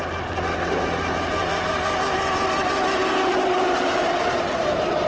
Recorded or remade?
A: recorded